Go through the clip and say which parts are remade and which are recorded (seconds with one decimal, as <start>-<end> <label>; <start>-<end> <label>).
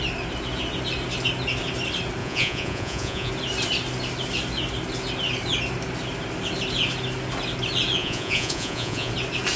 0.0-2.2 recorded; 2.2-3.3 remade; 3.3-8.0 recorded; 8.0-9.1 remade; 9.1-9.6 recorded